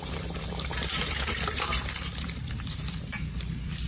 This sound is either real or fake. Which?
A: fake